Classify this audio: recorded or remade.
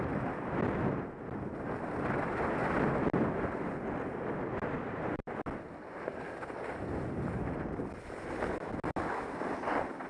recorded